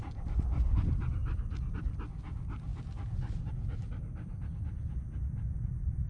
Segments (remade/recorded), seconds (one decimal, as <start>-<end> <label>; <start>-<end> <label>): 0.0-6.1 recorded